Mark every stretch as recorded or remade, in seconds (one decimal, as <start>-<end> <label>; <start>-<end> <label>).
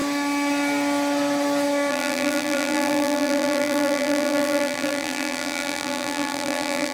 0.0-1.9 recorded; 1.9-6.9 remade